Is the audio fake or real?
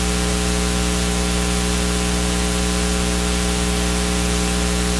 real